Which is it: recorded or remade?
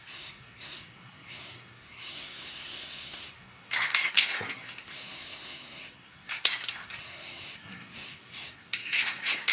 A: remade